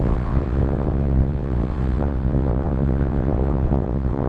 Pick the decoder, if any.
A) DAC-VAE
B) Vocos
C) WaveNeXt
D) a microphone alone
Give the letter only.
C